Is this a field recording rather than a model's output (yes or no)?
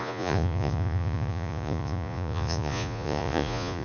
no